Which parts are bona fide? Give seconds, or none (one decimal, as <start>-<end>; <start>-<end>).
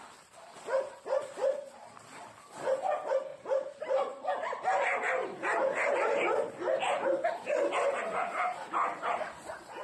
0.0-3.3; 3.9-9.8